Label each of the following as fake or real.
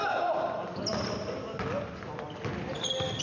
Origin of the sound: real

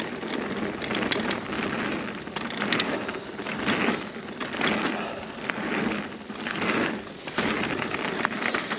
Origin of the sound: real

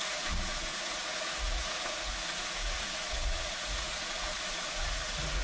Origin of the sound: fake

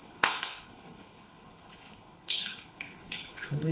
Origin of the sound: fake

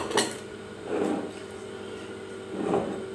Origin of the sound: real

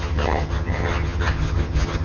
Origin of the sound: fake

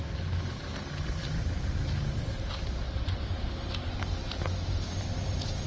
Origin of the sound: real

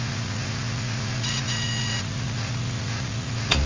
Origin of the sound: fake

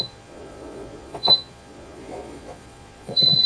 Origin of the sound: fake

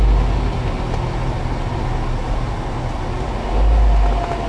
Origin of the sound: real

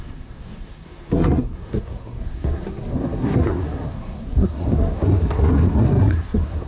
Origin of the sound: fake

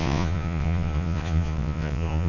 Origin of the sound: fake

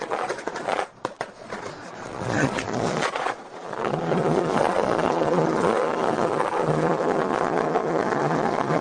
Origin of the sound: fake